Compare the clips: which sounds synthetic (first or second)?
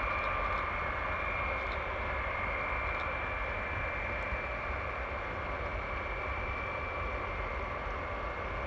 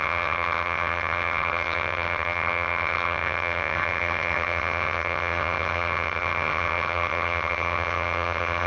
second